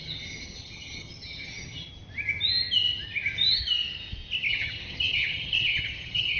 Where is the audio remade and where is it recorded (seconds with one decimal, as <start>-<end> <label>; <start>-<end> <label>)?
0.0-1.9 remade; 1.9-4.5 recorded; 4.5-6.4 remade